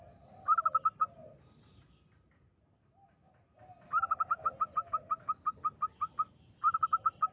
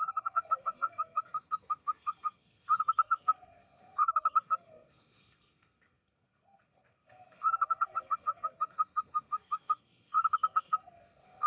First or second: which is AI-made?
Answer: second